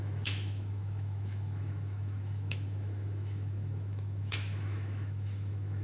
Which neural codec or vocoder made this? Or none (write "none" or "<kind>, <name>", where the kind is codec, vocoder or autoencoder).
autoencoder, DAC-VAE